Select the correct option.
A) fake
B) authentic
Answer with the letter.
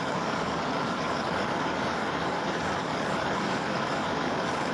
A